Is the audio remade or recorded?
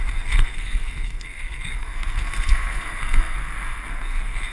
remade